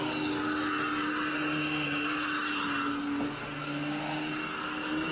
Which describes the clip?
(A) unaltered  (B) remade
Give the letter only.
A